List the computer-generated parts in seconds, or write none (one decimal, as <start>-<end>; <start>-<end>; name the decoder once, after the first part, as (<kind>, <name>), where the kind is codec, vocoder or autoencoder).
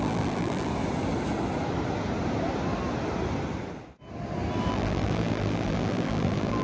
0.0-0.7 (vocoder, BigVGAN v2); 4.7-6.6